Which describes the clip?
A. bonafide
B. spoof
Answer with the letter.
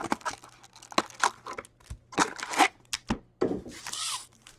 A